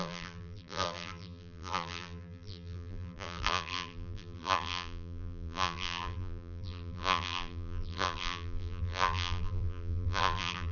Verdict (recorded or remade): remade